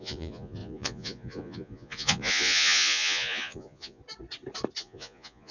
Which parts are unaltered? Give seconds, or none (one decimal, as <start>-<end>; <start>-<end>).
4.0-4.8